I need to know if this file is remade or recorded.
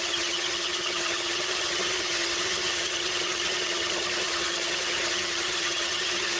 remade